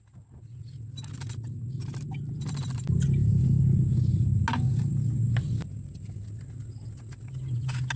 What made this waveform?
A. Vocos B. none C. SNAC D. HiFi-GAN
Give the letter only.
B